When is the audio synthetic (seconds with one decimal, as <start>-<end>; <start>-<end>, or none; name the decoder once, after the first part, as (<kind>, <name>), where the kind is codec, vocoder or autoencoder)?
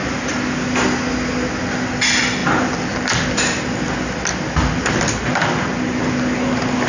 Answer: none